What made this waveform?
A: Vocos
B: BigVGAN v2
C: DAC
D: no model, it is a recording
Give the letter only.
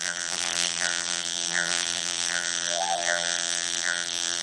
B